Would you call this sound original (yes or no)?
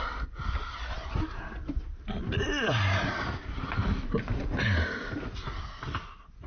yes